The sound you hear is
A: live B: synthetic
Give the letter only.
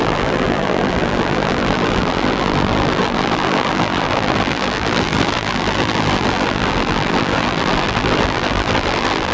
B